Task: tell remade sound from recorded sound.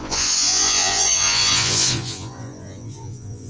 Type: remade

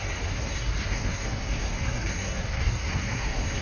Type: remade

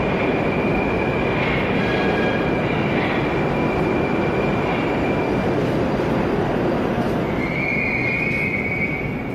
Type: recorded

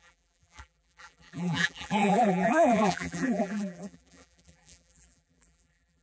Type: remade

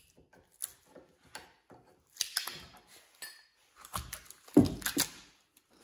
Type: recorded